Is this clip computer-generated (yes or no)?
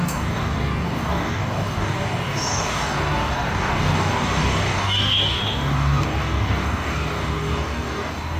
yes